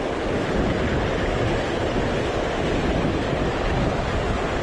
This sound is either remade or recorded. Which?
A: recorded